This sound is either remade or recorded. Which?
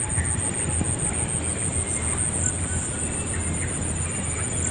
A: recorded